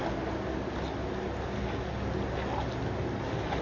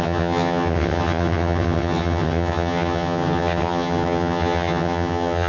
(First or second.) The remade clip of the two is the second